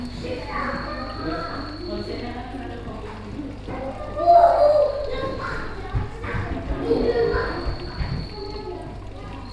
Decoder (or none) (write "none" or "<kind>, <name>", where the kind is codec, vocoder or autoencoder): none